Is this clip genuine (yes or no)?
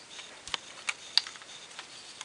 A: yes